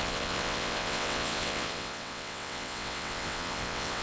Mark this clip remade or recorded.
remade